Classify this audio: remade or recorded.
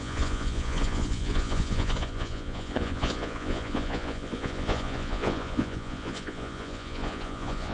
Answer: remade